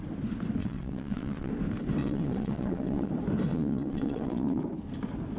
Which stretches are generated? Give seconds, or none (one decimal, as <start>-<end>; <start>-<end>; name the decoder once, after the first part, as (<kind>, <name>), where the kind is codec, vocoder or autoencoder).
0.6-1.5 (vocoder, WaveNeXt); 2.0-3.1; 3.5-4.6